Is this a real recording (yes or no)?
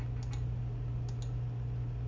yes